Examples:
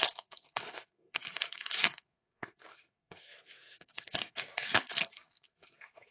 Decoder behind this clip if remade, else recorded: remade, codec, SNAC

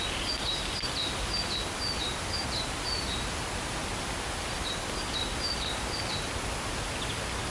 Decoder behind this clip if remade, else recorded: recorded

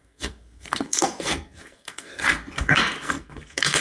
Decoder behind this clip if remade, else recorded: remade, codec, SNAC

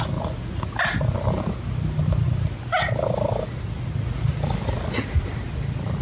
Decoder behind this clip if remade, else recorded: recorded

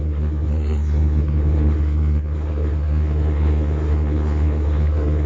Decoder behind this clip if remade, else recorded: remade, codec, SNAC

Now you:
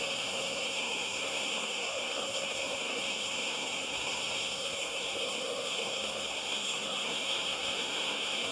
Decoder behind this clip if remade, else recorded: remade, codec, SNAC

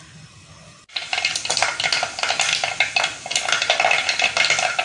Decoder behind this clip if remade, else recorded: recorded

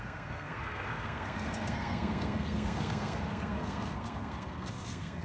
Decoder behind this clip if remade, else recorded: remade, codec, SNAC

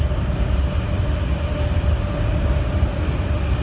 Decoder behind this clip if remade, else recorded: recorded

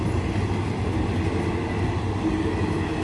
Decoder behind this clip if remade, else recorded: recorded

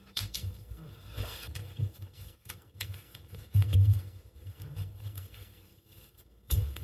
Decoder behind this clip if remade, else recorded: remade, codec, SNAC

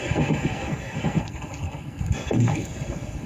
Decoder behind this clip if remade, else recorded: remade, codec, SNAC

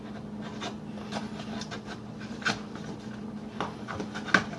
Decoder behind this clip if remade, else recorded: recorded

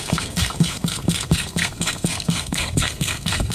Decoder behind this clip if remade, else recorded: remade, codec, SNAC